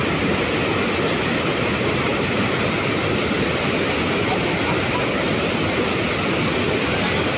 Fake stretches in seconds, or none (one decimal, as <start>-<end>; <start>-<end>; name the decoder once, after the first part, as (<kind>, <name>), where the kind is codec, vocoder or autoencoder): none